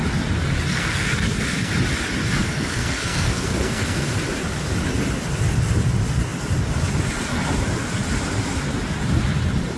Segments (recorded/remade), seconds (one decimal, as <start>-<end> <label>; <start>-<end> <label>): 0.0-0.7 recorded; 0.7-1.7 remade; 1.7-2.4 recorded; 2.4-4.2 remade; 4.2-9.8 recorded